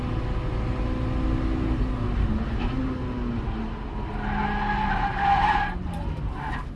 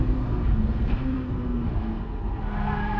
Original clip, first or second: first